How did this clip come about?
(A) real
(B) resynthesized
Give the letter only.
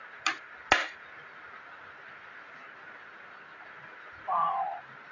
A